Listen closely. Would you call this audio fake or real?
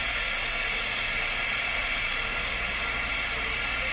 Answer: real